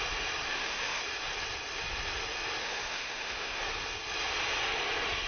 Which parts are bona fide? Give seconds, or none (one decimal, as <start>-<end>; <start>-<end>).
0.0-0.5; 1.0-2.6; 3.6-5.3

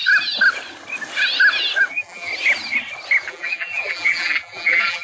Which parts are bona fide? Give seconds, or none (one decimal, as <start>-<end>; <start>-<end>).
0.0-1.9; 2.3-3.3

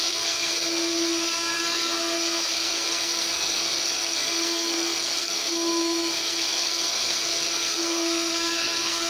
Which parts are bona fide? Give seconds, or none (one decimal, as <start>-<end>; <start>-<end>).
none

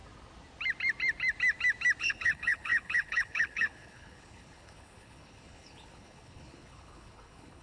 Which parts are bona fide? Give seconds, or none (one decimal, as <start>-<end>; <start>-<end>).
0.0-2.0

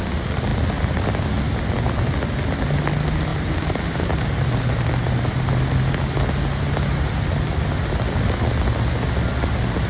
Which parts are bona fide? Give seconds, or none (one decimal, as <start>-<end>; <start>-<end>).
0.0-3.3; 5.5-9.9

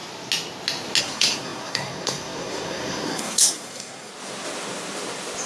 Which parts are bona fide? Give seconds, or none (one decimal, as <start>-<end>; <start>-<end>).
0.0-1.0; 4.1-5.5

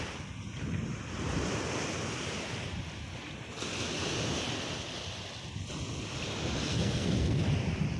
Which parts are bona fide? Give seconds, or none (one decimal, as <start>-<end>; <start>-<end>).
0.0-6.7; 7.4-8.0

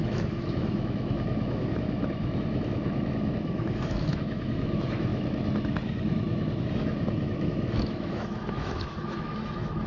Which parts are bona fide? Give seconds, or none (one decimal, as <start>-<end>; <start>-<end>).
none